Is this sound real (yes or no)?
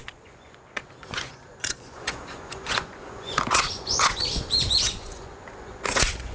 no